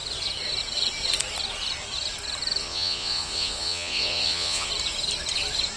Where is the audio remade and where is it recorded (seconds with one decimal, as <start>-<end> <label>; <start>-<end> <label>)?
0.0-2.6 recorded; 2.6-4.7 remade; 4.7-5.8 recorded

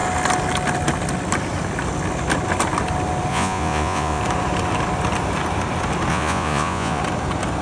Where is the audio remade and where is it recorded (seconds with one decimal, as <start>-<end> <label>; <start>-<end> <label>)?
0.0-3.3 recorded; 3.3-4.2 remade; 4.2-6.1 recorded; 6.1-7.0 remade; 7.0-7.6 recorded

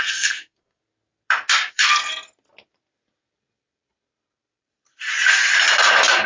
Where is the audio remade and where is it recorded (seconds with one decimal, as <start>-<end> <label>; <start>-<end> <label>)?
0.0-0.8 remade; 0.8-1.7 recorded; 1.7-2.1 remade; 2.1-6.3 recorded